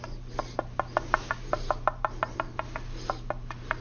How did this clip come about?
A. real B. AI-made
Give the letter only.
A